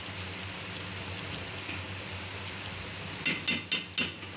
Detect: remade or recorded recorded